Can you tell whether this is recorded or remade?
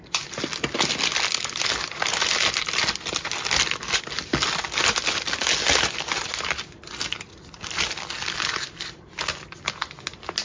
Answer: recorded